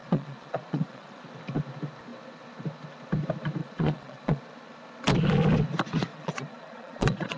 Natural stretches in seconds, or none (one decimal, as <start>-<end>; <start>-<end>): 1.3-3.6; 4.4-6.1